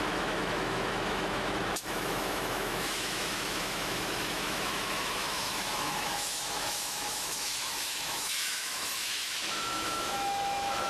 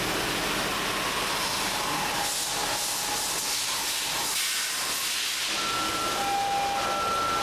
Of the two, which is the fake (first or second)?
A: first